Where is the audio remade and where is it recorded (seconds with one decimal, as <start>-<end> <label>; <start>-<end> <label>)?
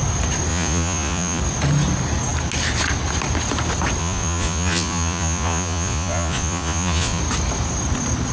0.0-0.5 recorded; 0.5-1.4 remade; 1.4-4.0 recorded; 4.0-7.2 remade; 7.2-8.3 recorded